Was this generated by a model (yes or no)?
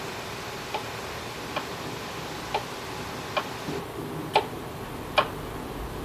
no